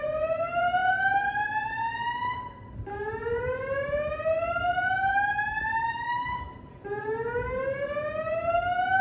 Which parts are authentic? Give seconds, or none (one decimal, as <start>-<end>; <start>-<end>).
0.0-9.0